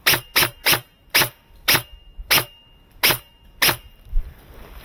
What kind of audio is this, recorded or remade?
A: recorded